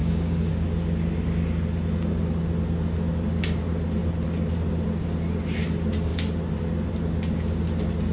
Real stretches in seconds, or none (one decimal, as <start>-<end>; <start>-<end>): 0.5-8.1

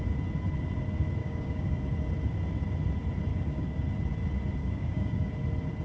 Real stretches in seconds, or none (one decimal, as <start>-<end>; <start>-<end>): 0.0-1.2; 1.8-3.3; 3.8-4.6; 5.3-5.8

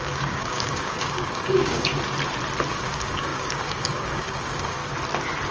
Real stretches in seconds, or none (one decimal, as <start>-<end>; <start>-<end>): 1.9-2.7; 4.8-5.5

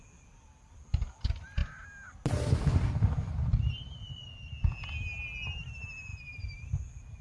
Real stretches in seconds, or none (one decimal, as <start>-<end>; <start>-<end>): 0.0-7.2